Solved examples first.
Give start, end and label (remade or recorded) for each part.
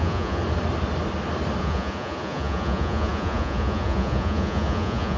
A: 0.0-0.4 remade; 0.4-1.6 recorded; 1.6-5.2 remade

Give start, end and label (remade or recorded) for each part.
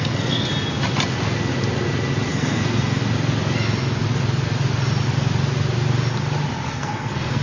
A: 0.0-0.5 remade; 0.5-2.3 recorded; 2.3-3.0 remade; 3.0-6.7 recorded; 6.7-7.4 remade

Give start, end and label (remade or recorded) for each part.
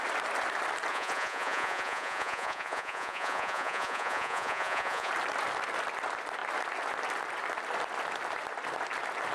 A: 0.0-0.9 recorded; 0.9-5.1 remade; 5.1-9.3 recorded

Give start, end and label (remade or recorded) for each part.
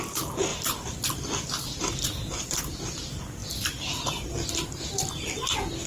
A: 0.0-5.9 recorded